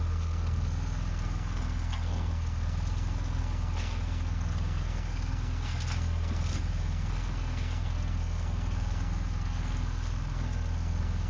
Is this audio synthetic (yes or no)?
yes